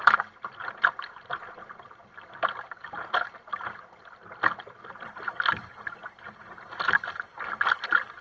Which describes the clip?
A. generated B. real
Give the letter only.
B